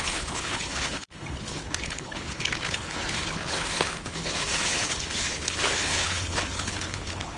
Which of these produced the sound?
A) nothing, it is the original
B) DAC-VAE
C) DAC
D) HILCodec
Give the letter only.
D